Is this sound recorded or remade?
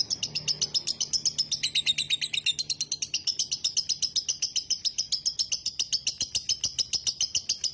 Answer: recorded